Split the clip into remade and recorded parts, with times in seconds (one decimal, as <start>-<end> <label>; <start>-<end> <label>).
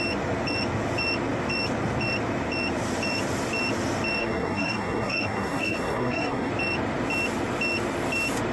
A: 0.0-4.2 recorded; 4.2-6.5 remade; 6.5-8.5 recorded